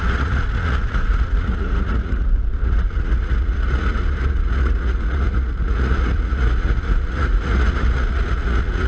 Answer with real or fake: fake